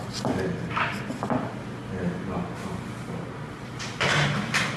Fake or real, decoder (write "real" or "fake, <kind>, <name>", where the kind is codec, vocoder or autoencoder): real